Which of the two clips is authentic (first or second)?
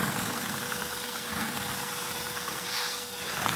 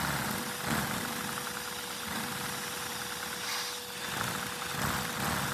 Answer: second